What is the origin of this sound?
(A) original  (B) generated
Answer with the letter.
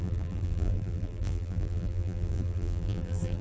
B